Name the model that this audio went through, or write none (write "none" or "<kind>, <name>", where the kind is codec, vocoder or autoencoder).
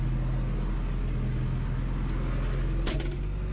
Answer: none